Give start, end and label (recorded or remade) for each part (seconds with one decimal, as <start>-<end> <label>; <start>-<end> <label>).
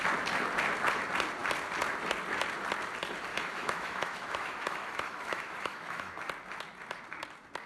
0.0-3.3 recorded; 3.3-6.2 remade; 6.2-7.7 recorded